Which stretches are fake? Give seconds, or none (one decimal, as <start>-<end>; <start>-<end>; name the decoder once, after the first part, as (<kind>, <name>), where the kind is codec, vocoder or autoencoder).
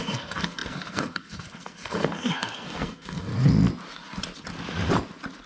0.0-3.3 (codec, SNAC)